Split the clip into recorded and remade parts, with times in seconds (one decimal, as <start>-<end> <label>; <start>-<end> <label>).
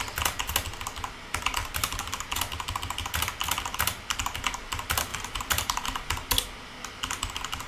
0.0-1.6 recorded; 1.6-2.4 remade; 2.4-5.1 recorded; 5.1-6.1 remade; 6.1-7.7 recorded